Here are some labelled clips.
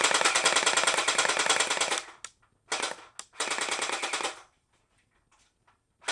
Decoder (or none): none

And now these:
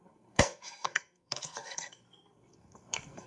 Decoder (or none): codec, SNAC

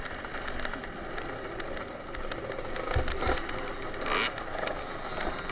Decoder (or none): none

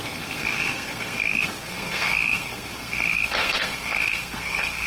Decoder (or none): codec, SNAC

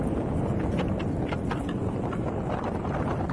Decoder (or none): none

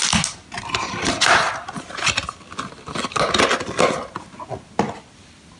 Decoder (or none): none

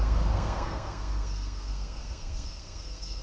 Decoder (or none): codec, SNAC